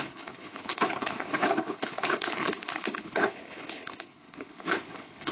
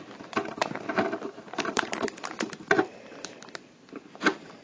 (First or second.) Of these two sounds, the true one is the second